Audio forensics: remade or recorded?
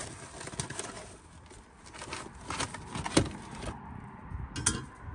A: recorded